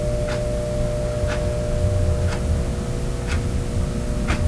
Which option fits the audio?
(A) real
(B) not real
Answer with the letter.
A